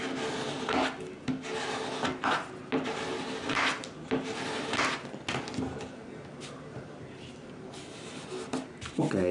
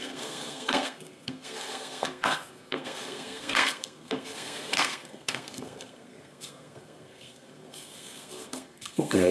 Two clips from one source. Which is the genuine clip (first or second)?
first